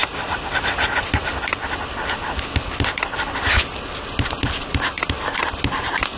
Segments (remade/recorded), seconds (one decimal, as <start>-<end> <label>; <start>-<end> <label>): 0.0-6.2 recorded

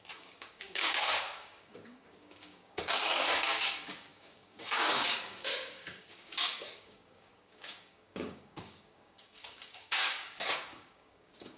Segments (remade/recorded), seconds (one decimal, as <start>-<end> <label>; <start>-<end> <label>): 0.0-11.6 remade

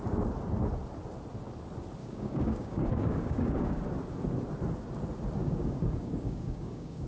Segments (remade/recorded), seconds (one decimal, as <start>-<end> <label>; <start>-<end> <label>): 0.0-2.0 recorded; 2.0-3.8 remade; 3.8-5.4 recorded; 5.4-7.1 remade

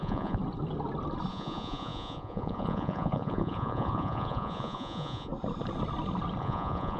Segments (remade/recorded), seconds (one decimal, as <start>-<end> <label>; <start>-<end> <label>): 0.0-0.4 remade; 0.4-1.3 recorded; 1.3-5.3 remade; 5.3-6.4 recorded; 6.4-7.0 remade

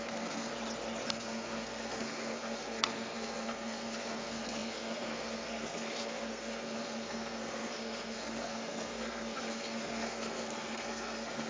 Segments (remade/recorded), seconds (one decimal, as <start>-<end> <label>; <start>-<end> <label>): 0.0-0.5 remade; 0.5-1.1 recorded; 1.1-11.5 remade